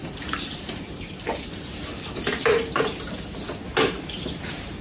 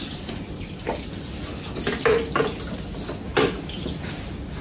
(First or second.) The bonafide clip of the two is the second